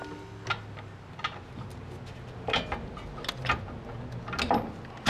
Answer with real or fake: real